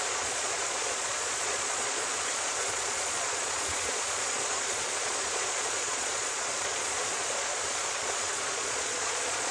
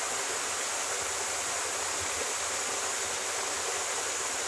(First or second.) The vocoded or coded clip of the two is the first